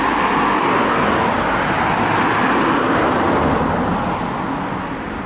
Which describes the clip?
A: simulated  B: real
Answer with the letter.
B